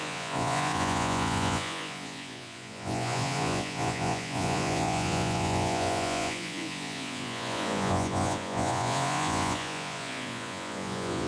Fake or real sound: fake